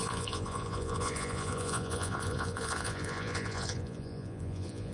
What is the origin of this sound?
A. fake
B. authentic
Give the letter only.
A